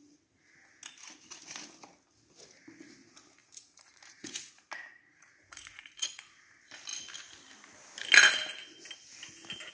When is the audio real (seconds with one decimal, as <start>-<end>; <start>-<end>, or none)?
0.0-3.4; 4.5-5.0; 6.2-9.7